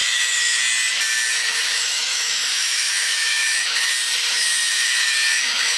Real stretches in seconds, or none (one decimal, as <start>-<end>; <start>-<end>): 0.6-1.5; 3.9-4.3